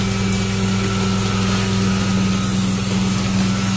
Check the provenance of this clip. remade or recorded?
recorded